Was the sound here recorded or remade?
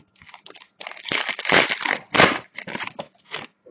recorded